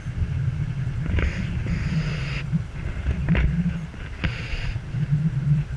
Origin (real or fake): real